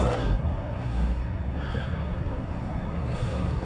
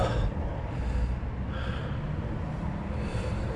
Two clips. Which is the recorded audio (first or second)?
second